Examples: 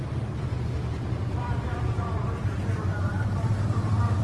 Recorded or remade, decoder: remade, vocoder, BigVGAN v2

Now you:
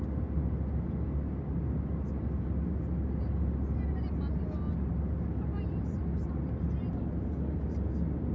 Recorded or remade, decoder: recorded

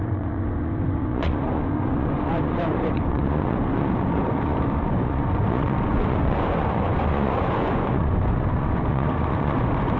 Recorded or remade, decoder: remade, vocoder, Vocos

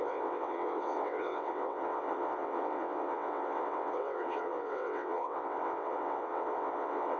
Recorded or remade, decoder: remade, vocoder, WaveNeXt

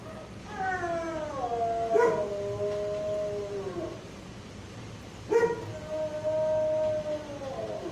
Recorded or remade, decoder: recorded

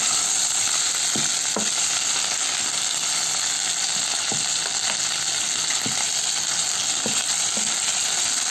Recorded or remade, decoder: recorded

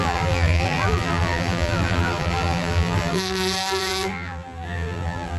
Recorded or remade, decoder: remade, vocoder, BigVGAN v2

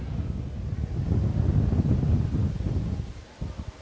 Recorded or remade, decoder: recorded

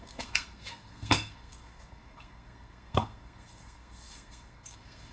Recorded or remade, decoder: remade, codec, SNAC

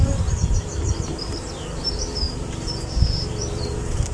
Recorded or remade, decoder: remade, vocoder, BigVGAN v2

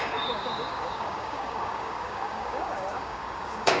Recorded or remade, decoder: remade, codec, DAC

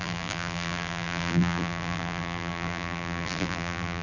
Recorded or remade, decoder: remade, vocoder, BigVGAN v2